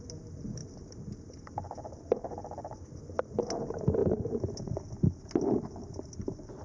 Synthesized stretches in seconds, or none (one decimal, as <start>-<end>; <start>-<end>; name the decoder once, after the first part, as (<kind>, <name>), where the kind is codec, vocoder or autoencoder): 4.0-4.7 (vocoder, BigVGAN v2)